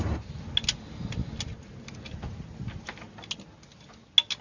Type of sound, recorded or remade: recorded